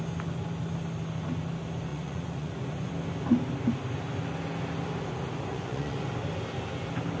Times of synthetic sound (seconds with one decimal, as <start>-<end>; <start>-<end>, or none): 1.9-2.9; 5.5-6.1